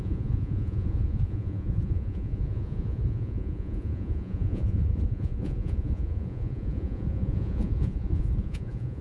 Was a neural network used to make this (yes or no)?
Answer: yes